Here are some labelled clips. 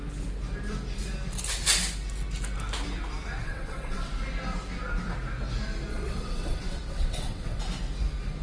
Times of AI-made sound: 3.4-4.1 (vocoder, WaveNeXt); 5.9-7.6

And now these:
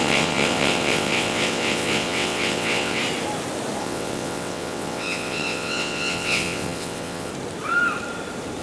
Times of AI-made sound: 0.0-3.0 (vocoder, WaveNeXt); 3.8-7.3

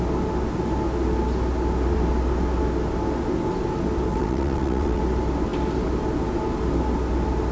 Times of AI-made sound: 4.1-5.0 (vocoder, WaveNeXt)

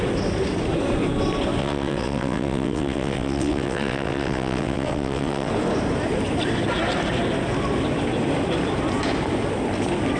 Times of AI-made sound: 1.6-5.5 (vocoder, WaveNeXt)

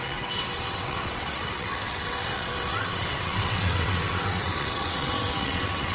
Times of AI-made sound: 0.0-5.9 (vocoder, WaveNeXt)

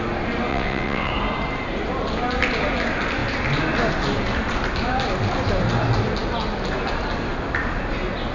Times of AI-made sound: 0.5-1.1 (vocoder, WaveNeXt)

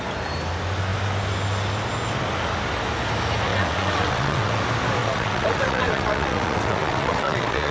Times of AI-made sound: 3.5-4.6 (vocoder, WaveNeXt); 5.0-7.7

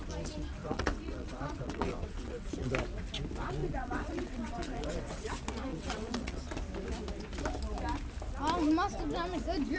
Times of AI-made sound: 0.6-2.7 (vocoder, WaveNeXt); 3.6-5.3; 5.7-6.4